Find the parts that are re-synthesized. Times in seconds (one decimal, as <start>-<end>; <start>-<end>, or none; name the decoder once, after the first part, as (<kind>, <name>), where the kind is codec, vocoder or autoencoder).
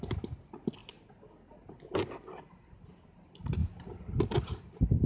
none